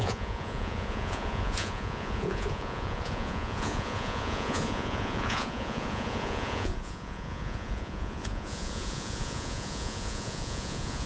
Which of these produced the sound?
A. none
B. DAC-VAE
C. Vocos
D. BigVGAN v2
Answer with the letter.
C